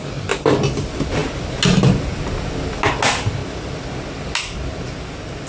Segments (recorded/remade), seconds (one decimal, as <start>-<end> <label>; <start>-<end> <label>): 0.0-3.4 recorded; 3.4-4.2 remade; 4.2-5.5 recorded

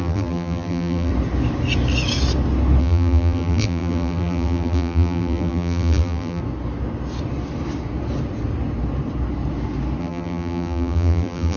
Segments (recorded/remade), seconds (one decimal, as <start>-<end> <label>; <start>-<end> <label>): 0.0-1.1 remade; 1.1-2.8 recorded; 2.8-6.4 remade; 6.4-10.0 recorded; 10.0-11.6 remade